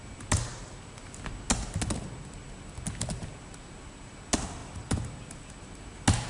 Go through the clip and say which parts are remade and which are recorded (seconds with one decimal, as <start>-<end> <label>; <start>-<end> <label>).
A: 0.0-6.3 recorded